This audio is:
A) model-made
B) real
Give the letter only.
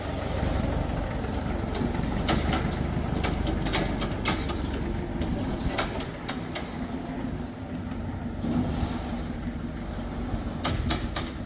B